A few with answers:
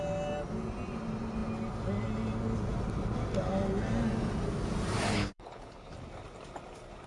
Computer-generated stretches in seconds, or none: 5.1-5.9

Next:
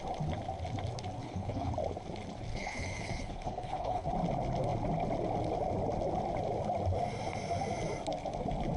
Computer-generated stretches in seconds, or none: 1.2-1.7; 2.5-4.1

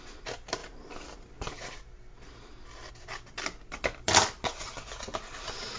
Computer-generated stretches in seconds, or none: none

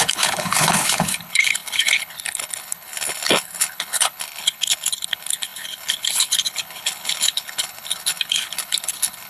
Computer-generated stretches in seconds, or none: 0.0-9.3

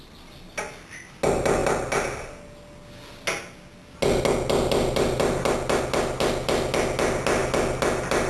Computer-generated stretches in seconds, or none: none

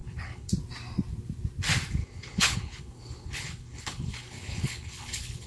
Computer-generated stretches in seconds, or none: 0.0-0.5; 2.0-5.5